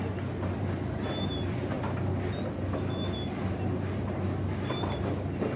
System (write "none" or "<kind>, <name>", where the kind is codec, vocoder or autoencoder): none